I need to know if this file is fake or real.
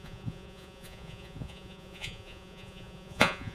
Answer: fake